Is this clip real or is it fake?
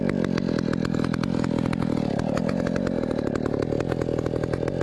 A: real